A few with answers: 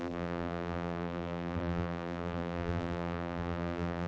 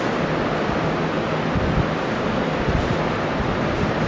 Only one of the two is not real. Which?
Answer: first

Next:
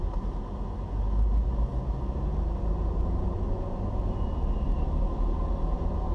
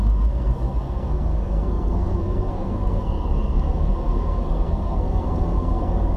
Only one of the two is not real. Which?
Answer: second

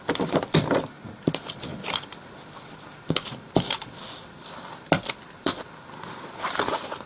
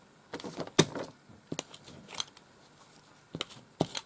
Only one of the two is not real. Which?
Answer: first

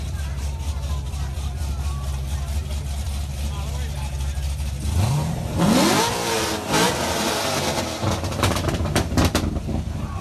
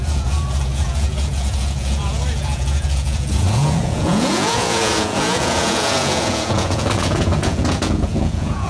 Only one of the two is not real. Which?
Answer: second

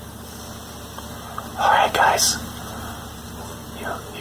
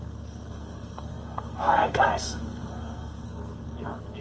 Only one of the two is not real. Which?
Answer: second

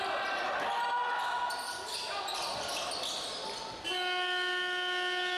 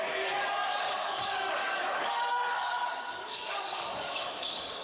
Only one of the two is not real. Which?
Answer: second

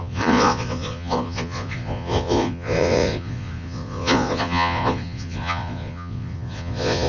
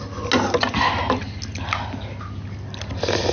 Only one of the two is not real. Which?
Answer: first